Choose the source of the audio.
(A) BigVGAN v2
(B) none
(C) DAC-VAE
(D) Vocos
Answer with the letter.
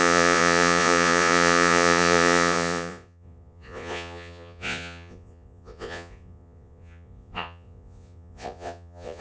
D